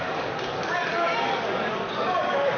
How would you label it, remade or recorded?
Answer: remade